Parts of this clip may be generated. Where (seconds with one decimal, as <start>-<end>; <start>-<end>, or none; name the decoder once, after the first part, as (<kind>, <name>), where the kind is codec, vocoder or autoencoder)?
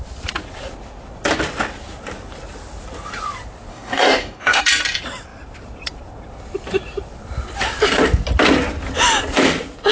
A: 3.7-4.6 (codec, DAC)